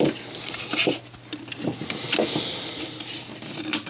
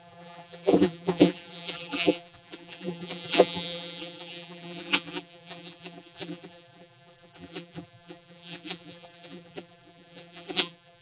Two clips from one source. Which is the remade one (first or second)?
second